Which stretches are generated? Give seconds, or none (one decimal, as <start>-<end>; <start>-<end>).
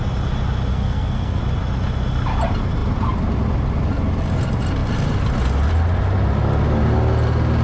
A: 0.7-1.4